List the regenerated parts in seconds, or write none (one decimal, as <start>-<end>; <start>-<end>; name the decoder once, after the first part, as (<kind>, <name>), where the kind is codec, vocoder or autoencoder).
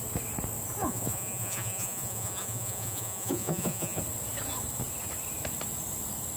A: 0.8-4.0 (vocoder, Vocos)